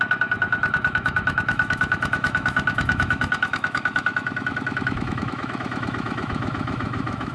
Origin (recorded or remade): remade